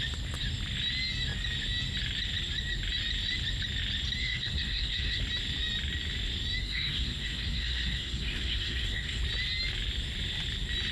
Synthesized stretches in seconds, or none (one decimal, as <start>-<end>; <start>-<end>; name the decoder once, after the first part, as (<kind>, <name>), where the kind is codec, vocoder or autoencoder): 4.2-5.2 (codec, SNAC); 6.6-9.2